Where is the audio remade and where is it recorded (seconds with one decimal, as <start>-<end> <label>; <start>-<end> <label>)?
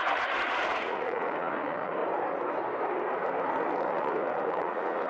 0.0-2.0 remade; 2.0-3.8 recorded; 3.8-5.1 remade